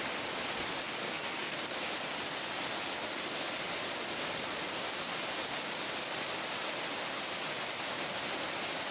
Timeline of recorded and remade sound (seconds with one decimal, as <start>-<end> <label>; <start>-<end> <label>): 0.0-1.0 recorded; 1.0-1.5 remade; 1.5-8.9 recorded